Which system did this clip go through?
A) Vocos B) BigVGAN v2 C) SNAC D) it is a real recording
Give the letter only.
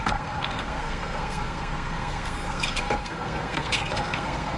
C